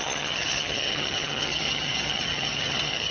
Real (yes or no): no